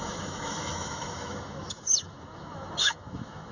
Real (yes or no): no